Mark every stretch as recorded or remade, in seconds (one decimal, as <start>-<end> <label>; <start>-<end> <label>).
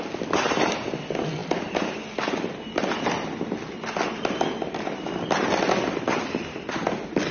0.0-7.3 recorded